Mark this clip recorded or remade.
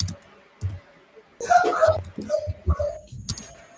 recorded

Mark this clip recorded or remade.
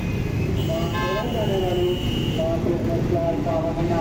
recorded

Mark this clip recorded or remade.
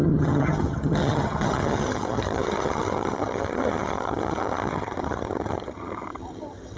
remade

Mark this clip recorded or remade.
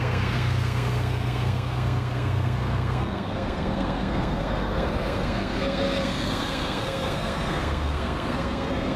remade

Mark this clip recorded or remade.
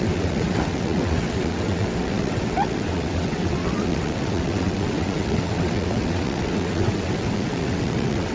remade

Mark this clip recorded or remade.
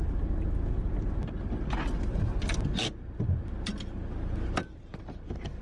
recorded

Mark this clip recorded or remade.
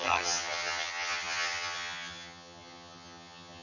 remade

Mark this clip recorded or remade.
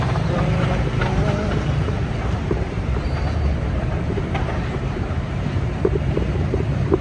remade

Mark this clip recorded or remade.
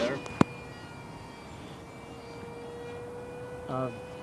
recorded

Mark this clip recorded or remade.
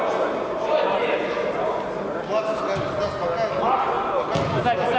recorded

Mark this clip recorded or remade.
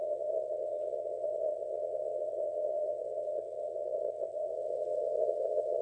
remade